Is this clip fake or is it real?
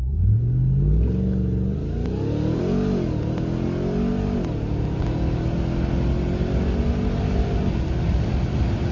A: real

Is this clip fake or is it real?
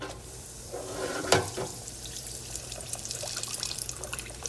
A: fake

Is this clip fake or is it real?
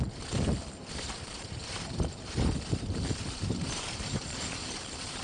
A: fake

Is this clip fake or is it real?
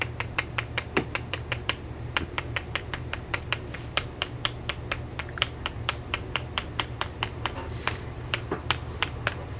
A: fake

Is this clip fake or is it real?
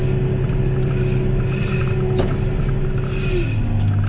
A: real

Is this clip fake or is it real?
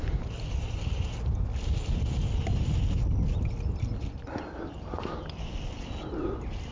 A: real